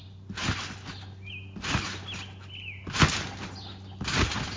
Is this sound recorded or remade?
recorded